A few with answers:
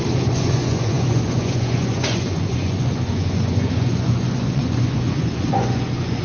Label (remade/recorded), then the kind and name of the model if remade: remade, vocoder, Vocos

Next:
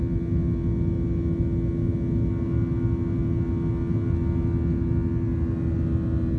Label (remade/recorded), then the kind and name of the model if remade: recorded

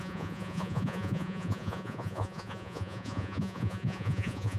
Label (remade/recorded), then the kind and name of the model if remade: remade, vocoder, Vocos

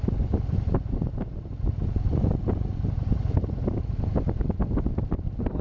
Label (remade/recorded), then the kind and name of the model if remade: recorded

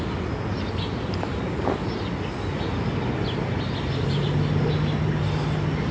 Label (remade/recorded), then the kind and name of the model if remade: recorded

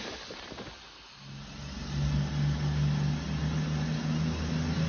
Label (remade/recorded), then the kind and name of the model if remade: recorded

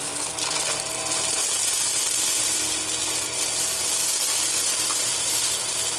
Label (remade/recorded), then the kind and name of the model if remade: recorded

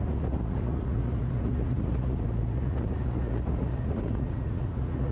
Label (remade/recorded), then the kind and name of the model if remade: remade, vocoder, Vocos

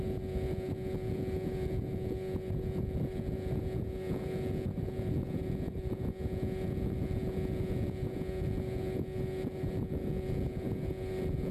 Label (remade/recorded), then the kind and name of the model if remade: remade, vocoder, Vocos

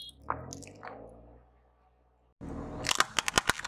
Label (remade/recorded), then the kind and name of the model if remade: recorded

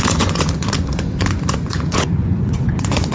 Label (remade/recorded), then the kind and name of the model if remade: remade, vocoder, Vocos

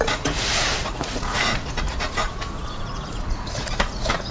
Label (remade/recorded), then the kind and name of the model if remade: remade, vocoder, Vocos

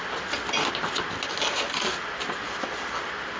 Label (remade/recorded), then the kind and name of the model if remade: recorded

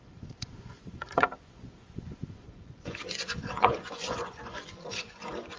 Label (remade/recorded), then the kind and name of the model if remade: remade, vocoder, Vocos